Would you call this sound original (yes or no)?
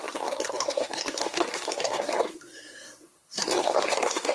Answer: no